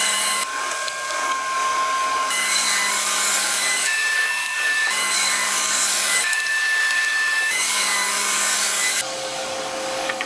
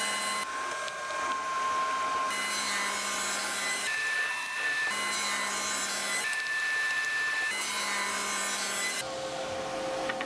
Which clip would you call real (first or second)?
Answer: second